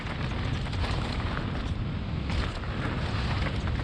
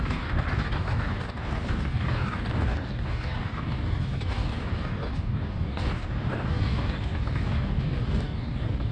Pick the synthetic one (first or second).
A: second